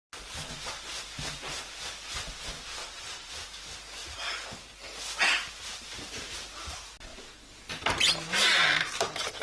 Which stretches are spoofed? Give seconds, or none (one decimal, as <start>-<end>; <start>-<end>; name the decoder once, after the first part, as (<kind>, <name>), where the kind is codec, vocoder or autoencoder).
2.8-3.3 (vocoder, WaveNeXt)